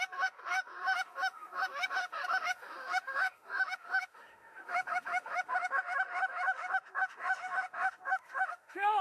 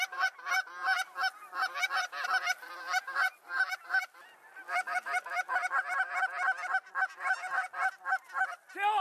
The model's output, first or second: first